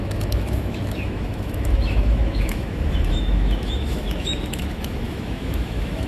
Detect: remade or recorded remade